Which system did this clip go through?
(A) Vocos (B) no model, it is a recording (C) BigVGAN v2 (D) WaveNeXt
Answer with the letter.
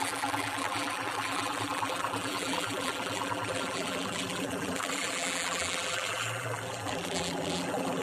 C